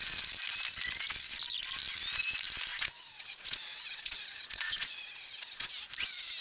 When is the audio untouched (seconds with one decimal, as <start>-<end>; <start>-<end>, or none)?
0.0-2.7; 5.7-6.4